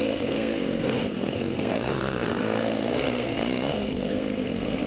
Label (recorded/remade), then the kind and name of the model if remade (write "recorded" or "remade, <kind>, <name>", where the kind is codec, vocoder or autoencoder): remade, codec, SNAC